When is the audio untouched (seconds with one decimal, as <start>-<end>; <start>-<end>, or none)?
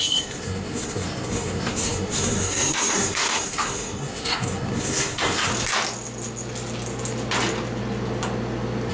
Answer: 5.5-8.9